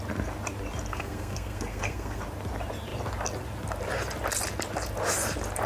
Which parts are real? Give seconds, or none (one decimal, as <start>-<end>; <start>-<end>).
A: 0.0-0.9; 2.2-5.7